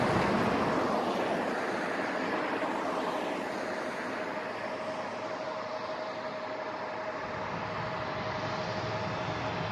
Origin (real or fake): real